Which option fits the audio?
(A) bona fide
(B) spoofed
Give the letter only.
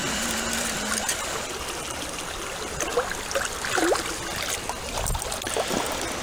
A